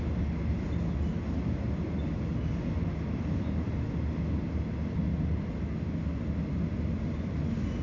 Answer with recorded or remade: recorded